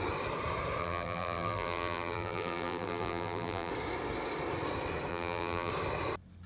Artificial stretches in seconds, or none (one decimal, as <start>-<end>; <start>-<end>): 0.8-3.7; 5.1-5.7